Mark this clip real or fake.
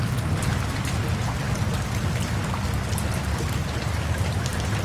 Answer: real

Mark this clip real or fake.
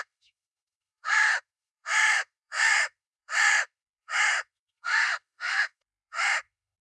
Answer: fake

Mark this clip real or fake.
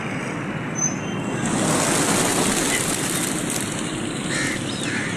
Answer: real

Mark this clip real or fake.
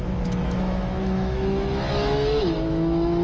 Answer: fake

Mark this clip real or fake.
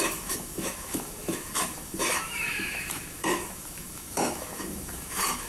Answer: fake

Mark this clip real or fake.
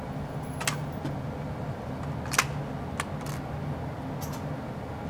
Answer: real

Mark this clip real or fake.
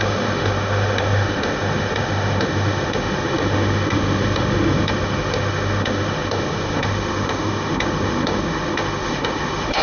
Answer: fake